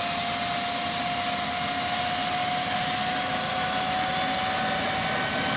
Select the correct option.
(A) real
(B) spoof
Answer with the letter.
A